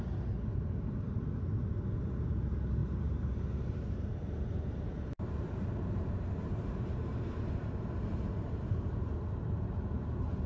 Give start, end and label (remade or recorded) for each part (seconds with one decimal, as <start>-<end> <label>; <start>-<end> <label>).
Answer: 0.0-2.8 recorded; 2.8-7.8 remade; 7.8-10.5 recorded